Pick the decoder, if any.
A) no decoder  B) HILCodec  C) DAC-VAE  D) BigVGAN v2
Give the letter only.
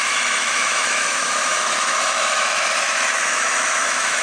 C